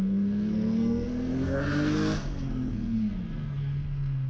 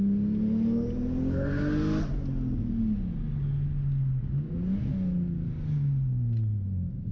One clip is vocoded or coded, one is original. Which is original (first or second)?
second